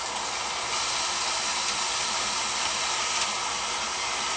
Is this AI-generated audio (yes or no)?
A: no